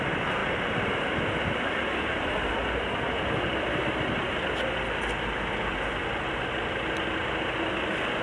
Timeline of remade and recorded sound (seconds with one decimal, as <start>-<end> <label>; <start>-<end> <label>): 0.0-8.2 recorded